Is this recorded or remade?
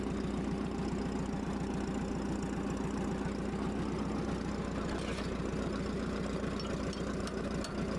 recorded